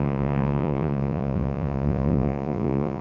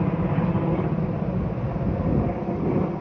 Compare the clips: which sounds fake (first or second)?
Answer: first